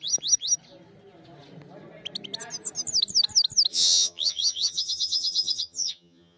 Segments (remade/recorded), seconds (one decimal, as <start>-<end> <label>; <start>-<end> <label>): 0.0-3.7 recorded; 3.7-6.4 remade